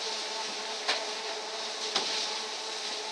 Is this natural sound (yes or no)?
yes